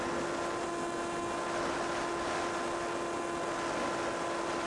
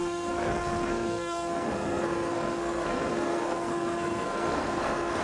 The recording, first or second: first